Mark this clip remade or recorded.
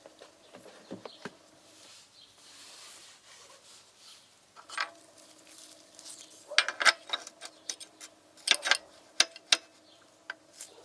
recorded